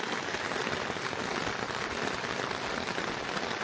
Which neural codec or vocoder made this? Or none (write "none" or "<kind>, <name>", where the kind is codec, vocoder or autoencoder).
none